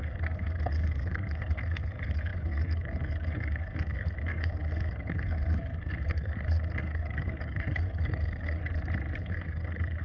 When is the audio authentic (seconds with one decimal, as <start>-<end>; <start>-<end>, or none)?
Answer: 8.6-9.2